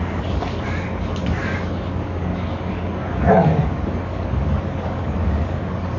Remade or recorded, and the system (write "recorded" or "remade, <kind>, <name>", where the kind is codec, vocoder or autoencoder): remade, codec, DAC